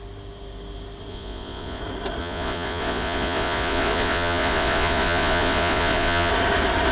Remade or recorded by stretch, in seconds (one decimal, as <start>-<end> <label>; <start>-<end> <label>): 0.0-1.1 recorded; 1.1-1.8 remade; 1.8-2.2 recorded; 2.2-6.3 remade; 6.3-6.9 recorded